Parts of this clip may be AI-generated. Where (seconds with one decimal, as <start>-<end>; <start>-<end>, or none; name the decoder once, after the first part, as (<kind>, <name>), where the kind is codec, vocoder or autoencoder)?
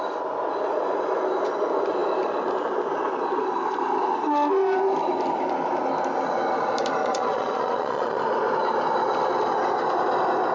7.0-8.2 (vocoder, Vocos)